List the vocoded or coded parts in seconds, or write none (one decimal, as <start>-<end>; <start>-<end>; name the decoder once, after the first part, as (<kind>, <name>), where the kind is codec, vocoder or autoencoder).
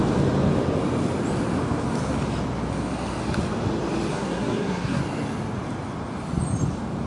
4.1-5.0 (codec, SNAC)